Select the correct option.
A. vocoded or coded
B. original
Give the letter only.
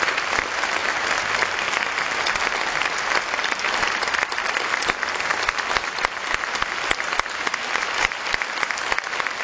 B